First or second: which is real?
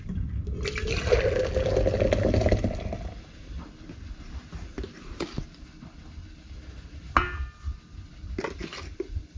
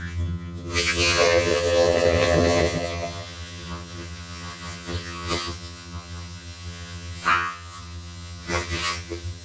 first